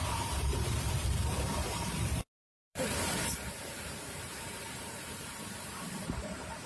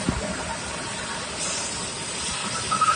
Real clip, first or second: second